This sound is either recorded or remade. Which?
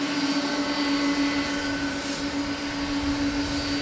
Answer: recorded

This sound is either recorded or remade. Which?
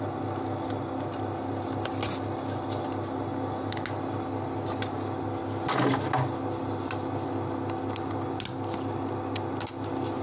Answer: recorded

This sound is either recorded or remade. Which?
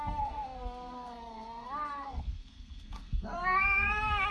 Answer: remade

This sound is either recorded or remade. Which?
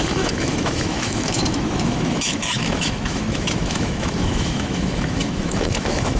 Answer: remade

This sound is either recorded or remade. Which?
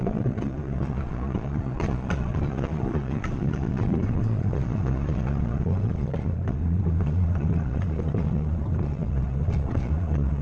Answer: remade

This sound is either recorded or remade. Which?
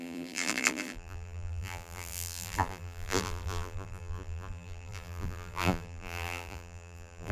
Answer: remade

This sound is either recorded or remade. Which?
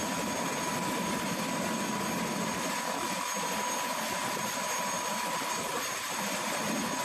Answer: recorded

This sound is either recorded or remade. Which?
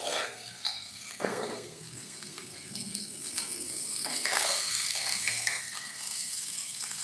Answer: remade